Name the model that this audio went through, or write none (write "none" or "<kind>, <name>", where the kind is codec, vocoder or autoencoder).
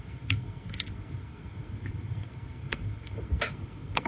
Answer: codec, SNAC